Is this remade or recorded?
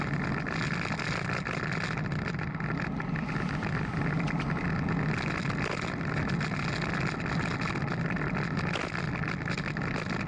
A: recorded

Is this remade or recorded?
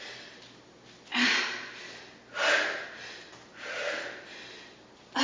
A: recorded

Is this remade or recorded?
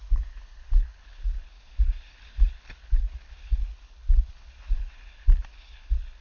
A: remade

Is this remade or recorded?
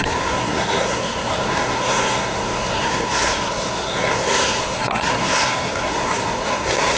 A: remade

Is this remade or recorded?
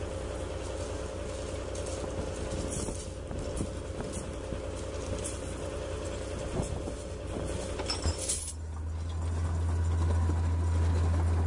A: recorded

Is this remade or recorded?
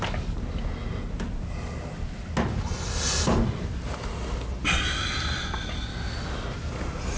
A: recorded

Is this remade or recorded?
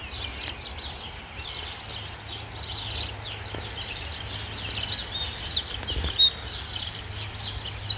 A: recorded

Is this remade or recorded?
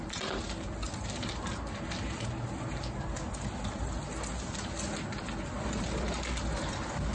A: recorded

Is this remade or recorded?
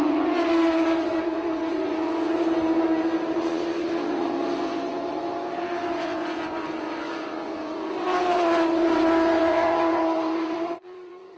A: remade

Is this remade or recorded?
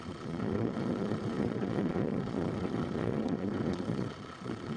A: remade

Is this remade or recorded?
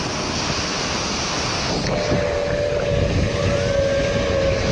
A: recorded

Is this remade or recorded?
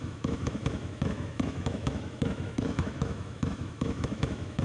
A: remade